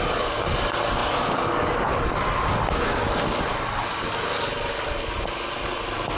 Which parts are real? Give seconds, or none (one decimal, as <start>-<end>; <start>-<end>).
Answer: 0.0-6.2